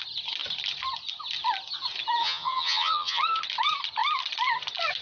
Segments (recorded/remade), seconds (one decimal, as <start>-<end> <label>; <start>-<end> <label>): 0.0-2.2 recorded; 2.2-3.2 remade; 3.2-5.0 recorded

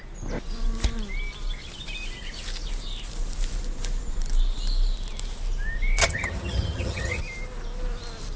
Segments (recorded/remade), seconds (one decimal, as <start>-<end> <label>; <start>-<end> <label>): 0.0-6.0 recorded; 6.0-7.2 remade; 7.2-8.4 recorded

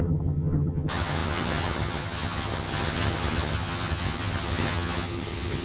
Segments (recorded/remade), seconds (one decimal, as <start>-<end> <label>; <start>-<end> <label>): 0.0-5.6 remade

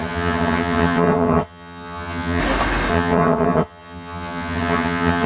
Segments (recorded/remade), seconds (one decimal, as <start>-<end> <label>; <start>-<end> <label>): 0.0-2.4 remade; 2.4-2.9 recorded; 2.9-5.3 remade

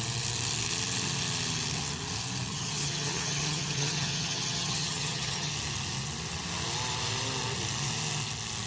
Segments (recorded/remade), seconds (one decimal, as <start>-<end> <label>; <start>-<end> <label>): 0.0-2.5 recorded; 2.5-5.5 remade; 5.5-8.7 recorded

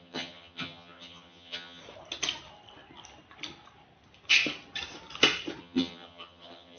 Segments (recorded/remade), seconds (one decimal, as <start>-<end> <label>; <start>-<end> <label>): 0.0-1.8 remade; 1.8-5.6 recorded; 5.6-6.8 remade

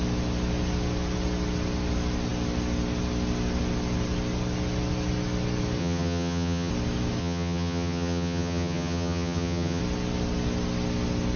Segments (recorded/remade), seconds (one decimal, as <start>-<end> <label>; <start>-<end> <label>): 0.0-5.8 recorded; 5.8-6.7 remade; 6.7-7.2 recorded; 7.2-9.8 remade; 9.8-11.4 recorded